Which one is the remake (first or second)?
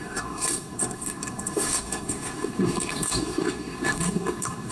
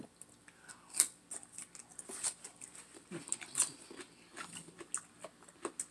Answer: first